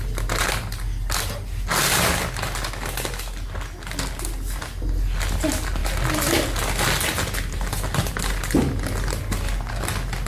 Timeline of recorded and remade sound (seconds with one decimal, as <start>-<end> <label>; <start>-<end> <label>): 0.0-10.3 recorded